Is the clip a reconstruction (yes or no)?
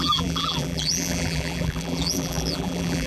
yes